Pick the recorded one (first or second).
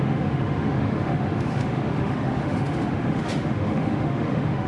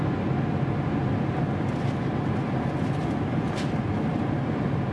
second